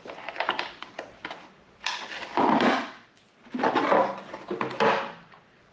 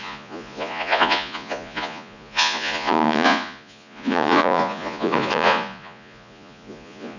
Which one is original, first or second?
first